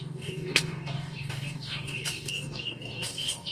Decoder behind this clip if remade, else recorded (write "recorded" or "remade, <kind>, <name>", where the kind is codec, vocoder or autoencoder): remade, codec, DAC